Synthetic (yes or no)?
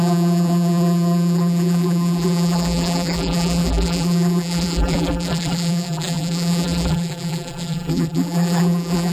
yes